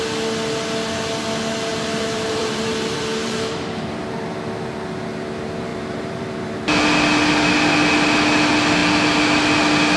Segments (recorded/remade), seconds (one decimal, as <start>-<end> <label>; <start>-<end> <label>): 0.0-1.7 recorded; 1.7-4.0 remade; 4.0-5.7 recorded; 5.7-6.5 remade; 6.5-10.0 recorded